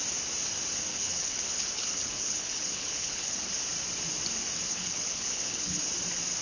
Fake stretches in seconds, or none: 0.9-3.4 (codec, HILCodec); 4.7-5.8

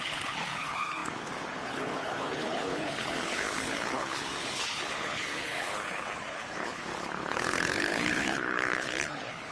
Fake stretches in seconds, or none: 0.0-9.5 (codec, HILCodec)